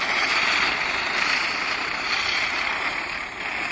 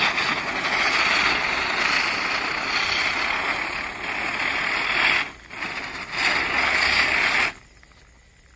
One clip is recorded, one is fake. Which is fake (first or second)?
first